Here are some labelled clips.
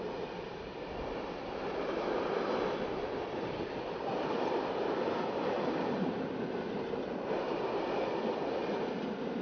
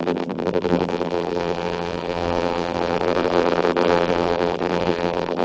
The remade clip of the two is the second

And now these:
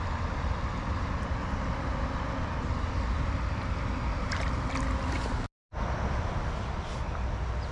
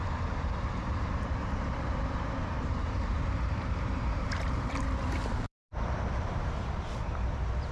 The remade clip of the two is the second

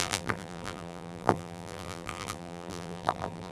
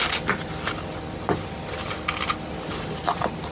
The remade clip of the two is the first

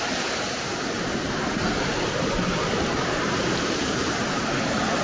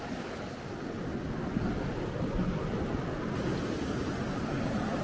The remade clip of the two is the first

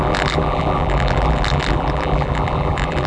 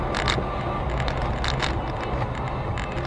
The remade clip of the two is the first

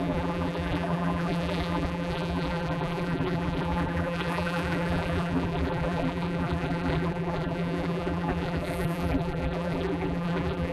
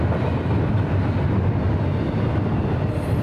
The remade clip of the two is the first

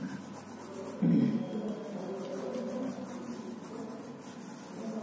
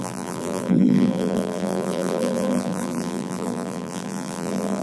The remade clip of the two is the second